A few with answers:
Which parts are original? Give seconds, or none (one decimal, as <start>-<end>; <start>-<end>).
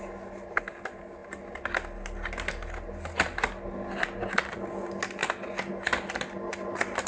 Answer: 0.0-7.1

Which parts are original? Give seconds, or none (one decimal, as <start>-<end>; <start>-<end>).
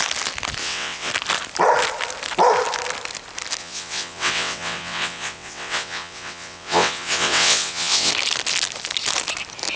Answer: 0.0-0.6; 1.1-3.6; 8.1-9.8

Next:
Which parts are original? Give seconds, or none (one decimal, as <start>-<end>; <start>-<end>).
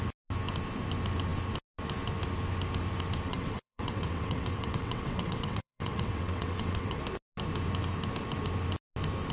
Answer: 0.0-3.3; 7.0-9.3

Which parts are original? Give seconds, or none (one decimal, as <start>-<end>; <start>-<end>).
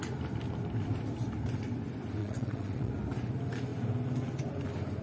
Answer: 0.0-2.2; 2.9-5.0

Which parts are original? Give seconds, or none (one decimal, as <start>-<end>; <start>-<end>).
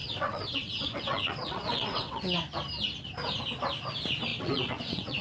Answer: 2.2-4.3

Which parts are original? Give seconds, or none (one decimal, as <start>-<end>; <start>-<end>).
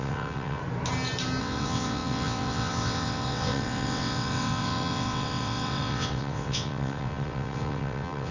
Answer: 0.6-1.4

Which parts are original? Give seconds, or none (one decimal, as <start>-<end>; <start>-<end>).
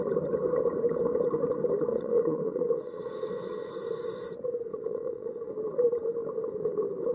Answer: 0.0-1.9; 3.7-4.7; 5.5-7.1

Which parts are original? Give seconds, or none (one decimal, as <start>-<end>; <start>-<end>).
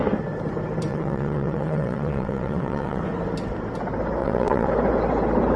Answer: 0.0-0.9; 3.0-4.2; 4.7-5.6